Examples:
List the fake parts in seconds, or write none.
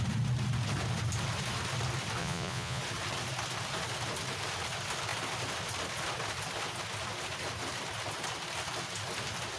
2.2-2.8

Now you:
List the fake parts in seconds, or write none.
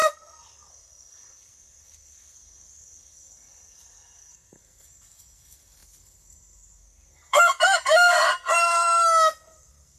0.0-10.0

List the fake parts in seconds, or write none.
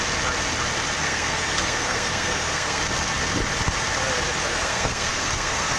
1.0-2.8; 4.5-5.8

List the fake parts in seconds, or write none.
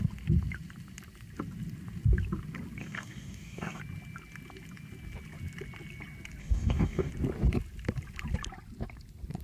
2.8-3.8; 6.4-7.1